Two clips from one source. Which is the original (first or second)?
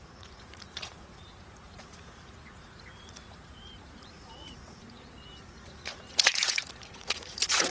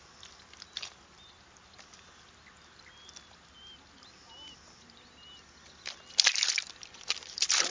second